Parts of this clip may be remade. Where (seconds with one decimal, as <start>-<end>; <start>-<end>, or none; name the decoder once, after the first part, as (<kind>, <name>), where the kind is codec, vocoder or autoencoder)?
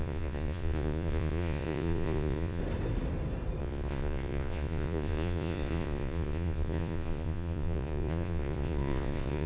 0.0-2.6 (vocoder, Vocos); 3.6-9.5